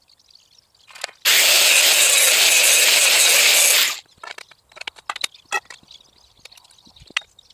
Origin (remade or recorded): recorded